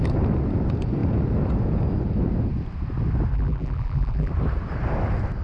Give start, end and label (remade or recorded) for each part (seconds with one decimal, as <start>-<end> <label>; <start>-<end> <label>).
0.0-3.3 recorded; 3.3-4.3 remade; 4.3-5.4 recorded